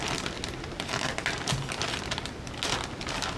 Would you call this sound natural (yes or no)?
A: yes